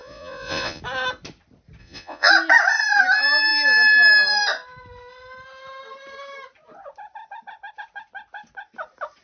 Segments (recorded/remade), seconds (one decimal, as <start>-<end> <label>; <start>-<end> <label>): 0.0-0.8 remade; 0.8-1.8 recorded; 1.8-2.3 remade; 2.3-9.2 recorded